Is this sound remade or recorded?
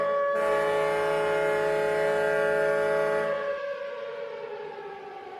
recorded